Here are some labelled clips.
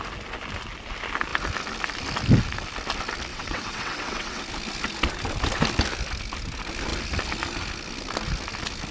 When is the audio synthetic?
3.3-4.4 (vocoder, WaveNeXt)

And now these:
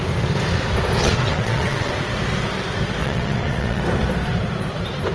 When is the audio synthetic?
1.0-1.9 (vocoder, WaveNeXt); 3.0-3.8

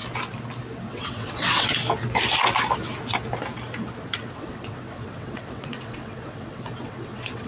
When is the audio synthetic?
0.8-1.8 (vocoder, WaveNeXt); 4.3-7.5